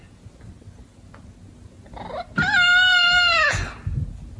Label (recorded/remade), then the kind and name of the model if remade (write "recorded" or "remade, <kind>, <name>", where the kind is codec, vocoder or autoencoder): recorded